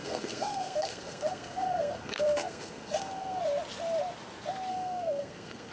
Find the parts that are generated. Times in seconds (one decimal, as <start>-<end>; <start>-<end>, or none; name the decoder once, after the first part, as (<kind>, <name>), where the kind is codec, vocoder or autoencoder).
0.0-3.4 (codec, SNAC); 4.7-5.7